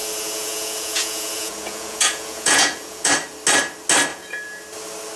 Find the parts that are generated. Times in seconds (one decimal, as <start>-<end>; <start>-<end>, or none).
0.0-3.1; 4.1-4.6